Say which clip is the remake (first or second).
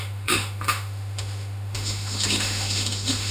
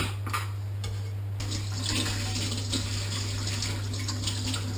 first